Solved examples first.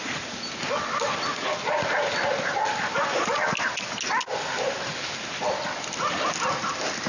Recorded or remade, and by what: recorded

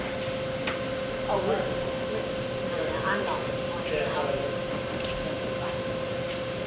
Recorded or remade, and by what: recorded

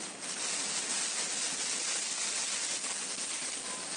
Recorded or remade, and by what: recorded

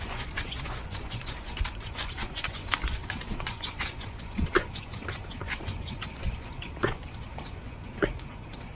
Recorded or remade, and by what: remade, vocoder, Vocos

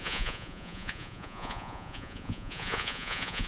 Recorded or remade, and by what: remade, vocoder, Vocos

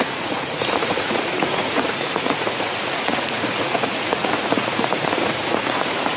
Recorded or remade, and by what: remade, vocoder, Vocos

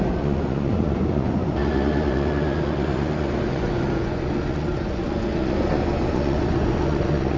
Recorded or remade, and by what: remade, vocoder, Vocos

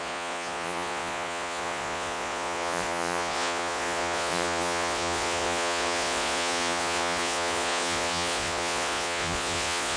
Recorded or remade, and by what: remade, vocoder, Vocos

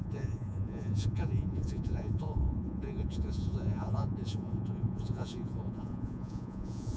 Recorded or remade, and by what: remade, vocoder, Vocos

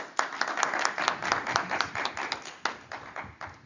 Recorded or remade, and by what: recorded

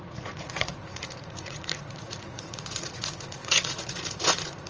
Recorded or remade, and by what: remade, vocoder, Vocos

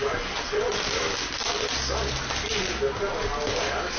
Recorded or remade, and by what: recorded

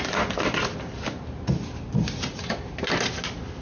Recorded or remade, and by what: recorded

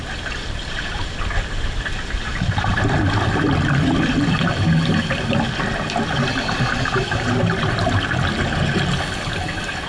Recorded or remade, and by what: recorded